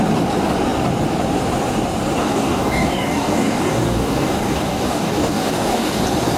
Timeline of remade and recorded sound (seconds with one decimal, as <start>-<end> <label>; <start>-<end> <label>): 0.0-2.2 recorded; 2.2-6.0 remade; 6.0-6.4 recorded